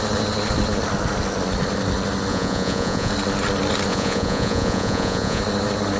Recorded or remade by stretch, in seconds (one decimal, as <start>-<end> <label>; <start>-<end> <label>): 0.0-2.3 recorded; 2.3-3.1 remade; 3.1-3.9 recorded; 3.9-5.4 remade; 5.4-6.0 recorded